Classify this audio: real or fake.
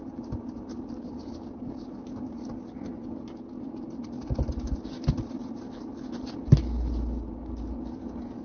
real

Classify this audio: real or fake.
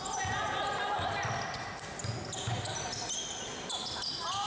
real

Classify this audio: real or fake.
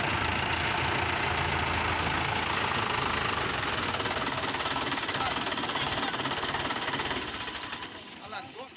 real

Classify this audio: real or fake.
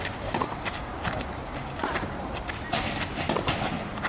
real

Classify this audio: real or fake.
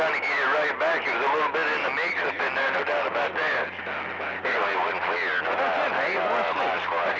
real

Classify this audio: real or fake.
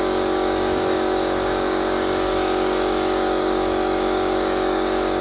fake